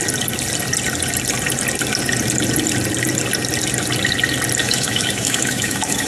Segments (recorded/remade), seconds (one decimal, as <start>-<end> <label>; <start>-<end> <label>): 0.0-4.6 recorded; 4.6-6.1 remade